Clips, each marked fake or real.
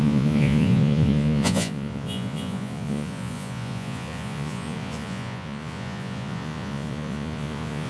fake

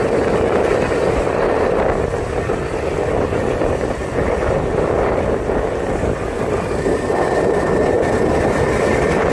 real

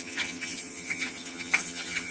fake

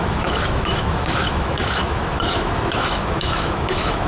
fake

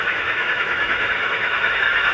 fake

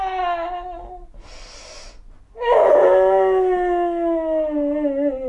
real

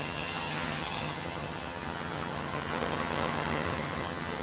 fake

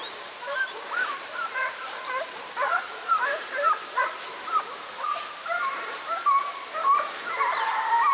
fake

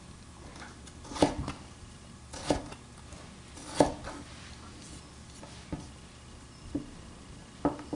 real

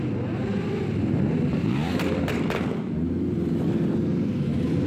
fake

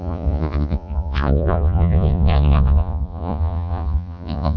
fake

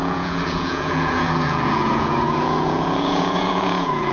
fake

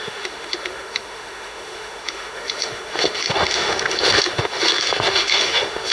fake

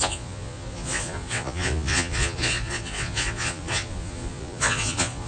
fake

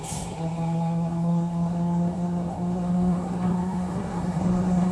fake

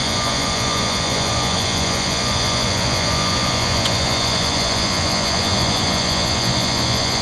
fake